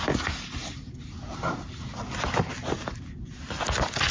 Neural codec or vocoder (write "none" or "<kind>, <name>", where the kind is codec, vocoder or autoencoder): none